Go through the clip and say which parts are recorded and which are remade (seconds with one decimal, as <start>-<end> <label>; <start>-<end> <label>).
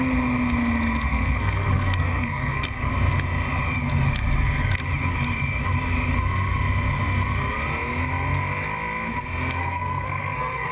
0.0-1.1 recorded; 1.1-2.9 remade; 2.9-9.6 recorded; 9.6-10.7 remade